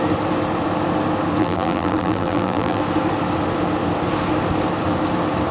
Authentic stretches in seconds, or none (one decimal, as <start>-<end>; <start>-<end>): 0.0-1.4; 2.8-5.5